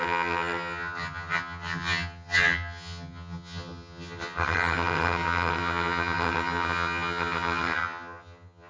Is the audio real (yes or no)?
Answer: no